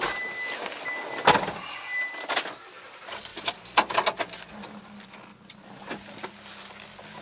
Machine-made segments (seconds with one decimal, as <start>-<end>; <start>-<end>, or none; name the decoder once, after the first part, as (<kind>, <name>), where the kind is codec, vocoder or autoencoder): none